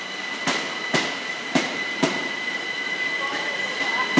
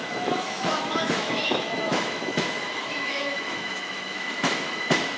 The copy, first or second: second